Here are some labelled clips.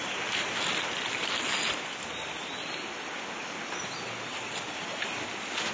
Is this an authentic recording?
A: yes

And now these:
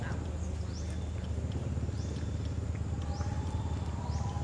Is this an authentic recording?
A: yes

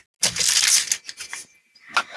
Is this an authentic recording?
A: yes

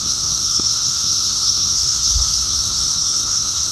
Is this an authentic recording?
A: no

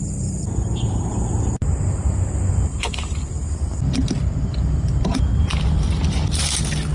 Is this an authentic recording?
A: yes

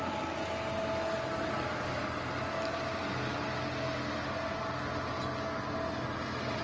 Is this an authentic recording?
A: yes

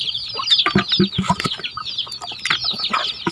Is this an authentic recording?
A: yes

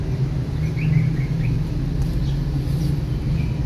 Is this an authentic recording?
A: yes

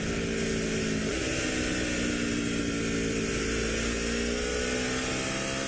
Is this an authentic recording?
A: yes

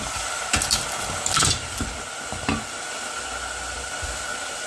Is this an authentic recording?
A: no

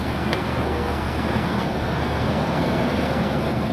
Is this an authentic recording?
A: no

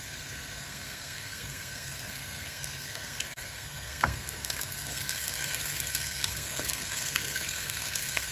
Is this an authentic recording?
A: no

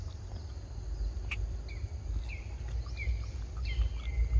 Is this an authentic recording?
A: yes